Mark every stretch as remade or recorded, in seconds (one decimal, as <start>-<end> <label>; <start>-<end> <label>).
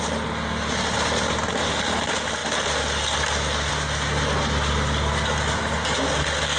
0.0-6.6 recorded